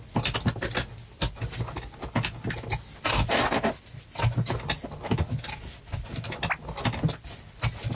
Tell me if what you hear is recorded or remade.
recorded